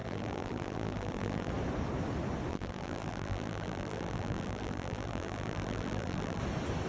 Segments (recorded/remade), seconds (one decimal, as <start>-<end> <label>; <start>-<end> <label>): 0.0-1.5 remade; 1.5-2.5 recorded; 2.5-6.4 remade; 6.4-6.9 recorded